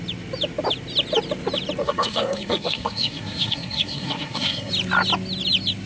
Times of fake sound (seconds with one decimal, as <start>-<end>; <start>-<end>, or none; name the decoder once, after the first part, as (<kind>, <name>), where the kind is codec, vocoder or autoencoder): 1.8-4.7 (codec, SNAC)

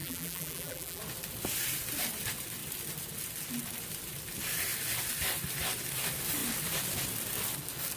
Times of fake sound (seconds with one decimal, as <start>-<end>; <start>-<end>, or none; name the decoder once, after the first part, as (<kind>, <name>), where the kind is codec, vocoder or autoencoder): 0.0-1.0 (vocoder, BigVGAN v2)

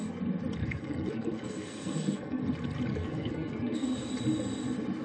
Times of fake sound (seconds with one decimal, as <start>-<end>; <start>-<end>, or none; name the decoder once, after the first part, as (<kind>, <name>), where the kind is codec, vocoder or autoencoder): 0.6-2.4 (codec, SNAC); 2.9-4.1

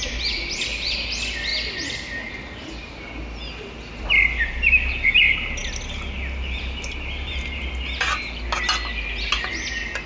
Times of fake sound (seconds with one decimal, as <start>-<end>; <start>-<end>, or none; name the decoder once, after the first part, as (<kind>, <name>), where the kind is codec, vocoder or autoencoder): none

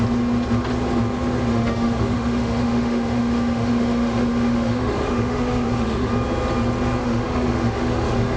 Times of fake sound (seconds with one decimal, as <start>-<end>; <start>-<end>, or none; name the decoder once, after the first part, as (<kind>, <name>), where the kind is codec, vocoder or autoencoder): 1.5-6.1 (autoencoder, DAC-VAE); 7.0-8.4